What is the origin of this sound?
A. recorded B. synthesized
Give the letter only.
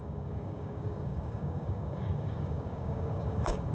B